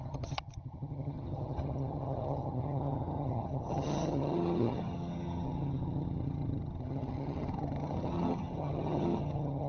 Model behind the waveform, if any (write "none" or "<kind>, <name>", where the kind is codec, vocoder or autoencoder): vocoder, HiFi-GAN